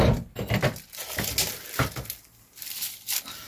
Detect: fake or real real